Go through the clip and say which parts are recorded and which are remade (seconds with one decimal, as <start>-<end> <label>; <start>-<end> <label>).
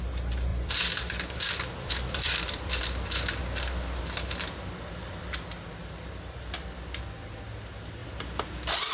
0.0-0.5 recorded; 0.5-2.8 remade; 2.8-8.0 recorded; 8.0-8.9 remade